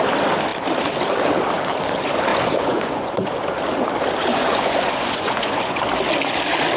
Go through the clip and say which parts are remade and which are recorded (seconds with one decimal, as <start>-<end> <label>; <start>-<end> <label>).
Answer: 0.0-2.3 recorded; 2.3-3.3 remade; 3.3-4.3 recorded; 4.3-5.8 remade; 5.8-6.8 recorded